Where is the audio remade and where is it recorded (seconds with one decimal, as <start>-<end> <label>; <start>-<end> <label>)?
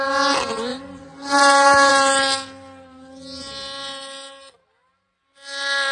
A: 0.0-0.7 recorded; 0.7-1.9 remade; 1.9-5.9 recorded